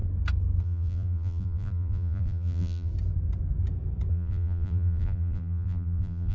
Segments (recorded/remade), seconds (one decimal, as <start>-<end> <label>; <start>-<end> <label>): 0.0-0.6 recorded; 0.6-2.9 remade; 2.9-4.1 recorded; 4.1-6.3 remade